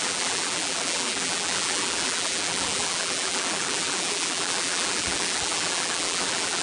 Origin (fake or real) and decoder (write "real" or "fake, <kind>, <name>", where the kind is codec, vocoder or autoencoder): fake, vocoder, BigVGAN v2